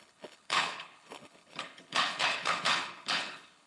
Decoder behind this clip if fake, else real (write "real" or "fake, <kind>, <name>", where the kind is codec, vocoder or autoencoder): fake, codec, HILCodec